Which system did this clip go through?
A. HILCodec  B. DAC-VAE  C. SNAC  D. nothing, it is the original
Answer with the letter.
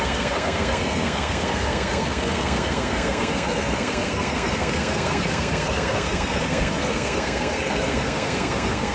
C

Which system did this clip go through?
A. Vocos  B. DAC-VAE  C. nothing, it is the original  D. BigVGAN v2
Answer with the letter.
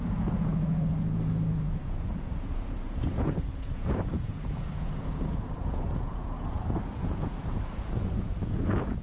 A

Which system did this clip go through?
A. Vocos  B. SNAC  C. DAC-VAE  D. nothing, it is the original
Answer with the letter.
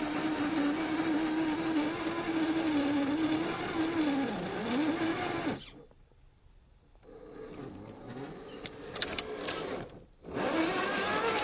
D